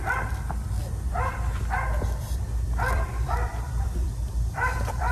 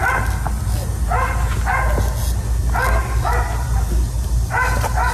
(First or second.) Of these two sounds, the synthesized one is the first